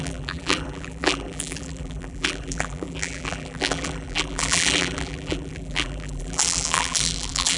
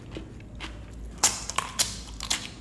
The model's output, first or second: first